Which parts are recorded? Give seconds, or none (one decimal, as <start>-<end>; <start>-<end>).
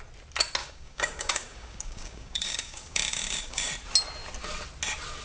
0.0-0.6; 3.7-5.2